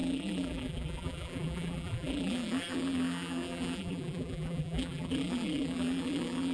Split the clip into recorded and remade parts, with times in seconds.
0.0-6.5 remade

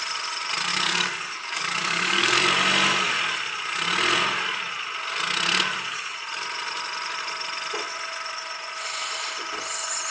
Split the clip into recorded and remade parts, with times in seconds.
0.0-0.7 recorded; 0.7-2.4 remade; 2.4-10.1 recorded

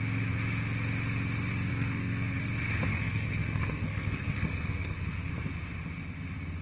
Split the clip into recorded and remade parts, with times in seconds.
0.0-1.7 recorded; 1.7-2.4 remade; 2.4-2.9 recorded; 2.9-5.3 remade; 5.3-6.6 recorded

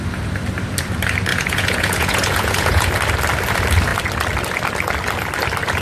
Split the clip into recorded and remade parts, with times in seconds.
0.0-1.3 recorded; 1.3-2.9 remade; 2.9-5.8 recorded

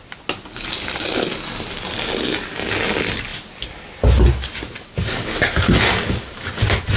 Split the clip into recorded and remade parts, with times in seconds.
0.0-7.0 recorded

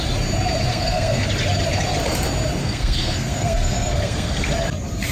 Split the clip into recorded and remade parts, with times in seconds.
0.0-0.7 recorded; 0.7-1.3 remade; 1.3-2.6 recorded; 2.6-4.5 remade; 4.5-5.1 recorded

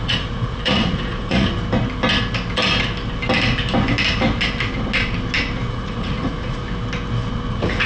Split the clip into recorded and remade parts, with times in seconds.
0.0-1.5 remade; 1.5-5.7 recorded; 5.7-6.6 remade; 6.6-7.5 recorded; 7.5-7.9 remade